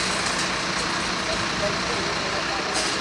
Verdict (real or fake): real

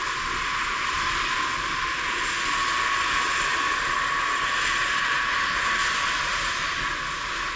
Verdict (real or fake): real